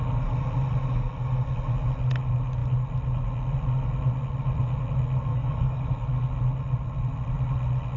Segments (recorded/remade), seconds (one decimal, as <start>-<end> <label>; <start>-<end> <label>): 0.0-5.3 recorded; 5.3-5.9 remade; 5.9-8.0 recorded